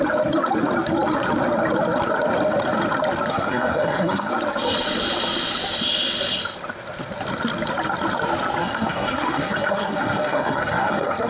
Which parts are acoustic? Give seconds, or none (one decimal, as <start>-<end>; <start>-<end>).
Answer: 0.0-3.3; 4.3-8.6